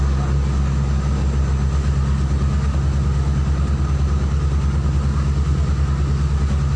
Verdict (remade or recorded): recorded